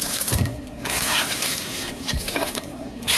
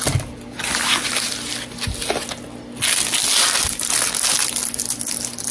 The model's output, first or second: first